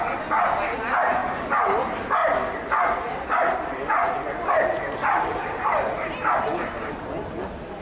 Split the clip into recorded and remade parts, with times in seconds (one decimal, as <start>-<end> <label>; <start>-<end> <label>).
0.0-7.8 recorded